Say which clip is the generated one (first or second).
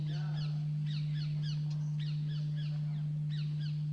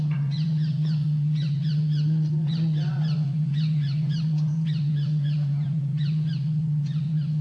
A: second